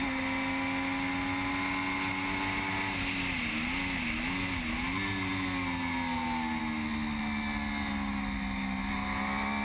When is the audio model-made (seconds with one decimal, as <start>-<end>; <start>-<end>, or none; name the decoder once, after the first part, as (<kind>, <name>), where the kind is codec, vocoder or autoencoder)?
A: none